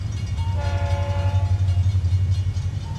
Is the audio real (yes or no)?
no